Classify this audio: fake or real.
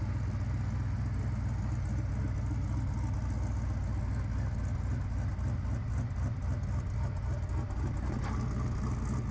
real